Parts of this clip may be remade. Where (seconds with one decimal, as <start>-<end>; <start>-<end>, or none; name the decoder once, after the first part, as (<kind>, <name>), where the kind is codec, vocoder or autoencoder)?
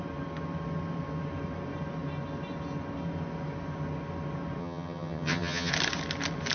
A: 4.6-5.7 (vocoder, HiFi-GAN)